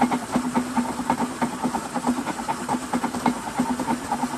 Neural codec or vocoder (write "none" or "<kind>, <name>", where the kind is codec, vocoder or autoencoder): none